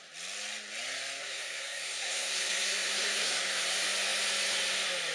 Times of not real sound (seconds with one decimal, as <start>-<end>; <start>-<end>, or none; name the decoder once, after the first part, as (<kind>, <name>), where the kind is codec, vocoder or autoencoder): 1.2-3.6 (codec, SNAC)